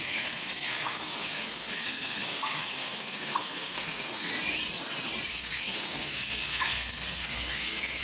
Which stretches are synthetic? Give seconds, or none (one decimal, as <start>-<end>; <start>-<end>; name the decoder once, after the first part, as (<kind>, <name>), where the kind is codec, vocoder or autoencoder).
0.0-4.3 (codec, SNAC); 5.3-8.0